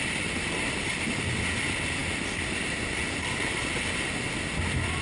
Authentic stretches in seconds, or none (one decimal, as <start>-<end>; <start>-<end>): 0.0-5.0